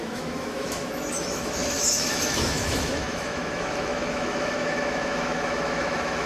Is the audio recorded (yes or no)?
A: no